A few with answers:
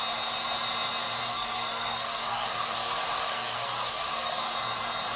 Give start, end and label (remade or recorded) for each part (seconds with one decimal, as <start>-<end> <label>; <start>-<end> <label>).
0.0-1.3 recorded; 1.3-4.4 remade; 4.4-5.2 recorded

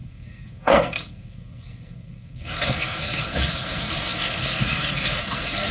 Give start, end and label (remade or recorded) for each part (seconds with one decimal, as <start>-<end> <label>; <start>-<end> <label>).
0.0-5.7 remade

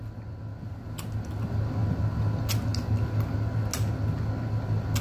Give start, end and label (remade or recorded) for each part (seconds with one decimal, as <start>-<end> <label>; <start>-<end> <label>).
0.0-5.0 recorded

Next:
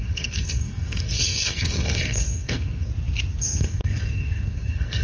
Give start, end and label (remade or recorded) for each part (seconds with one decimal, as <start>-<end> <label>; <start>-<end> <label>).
0.0-2.9 remade; 2.9-3.4 recorded; 3.4-5.0 remade

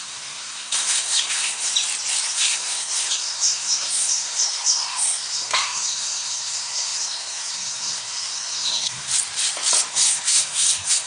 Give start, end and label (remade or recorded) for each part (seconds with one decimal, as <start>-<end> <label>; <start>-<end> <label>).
0.0-1.7 remade; 1.7-2.3 recorded; 2.3-9.1 remade; 9.1-9.9 recorded; 9.9-11.1 remade